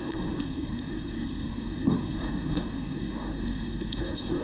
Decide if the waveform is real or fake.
fake